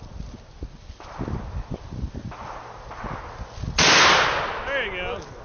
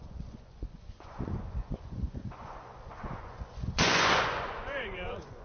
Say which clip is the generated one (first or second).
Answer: second